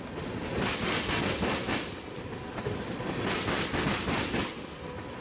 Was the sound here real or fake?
real